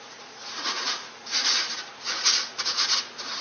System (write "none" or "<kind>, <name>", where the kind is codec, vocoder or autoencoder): vocoder, Vocos